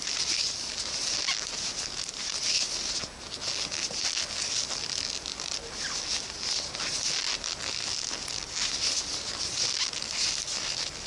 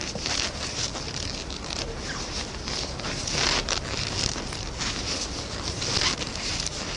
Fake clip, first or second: second